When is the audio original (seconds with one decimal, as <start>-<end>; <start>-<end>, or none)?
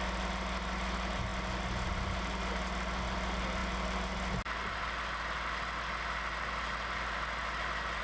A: 0.0-8.0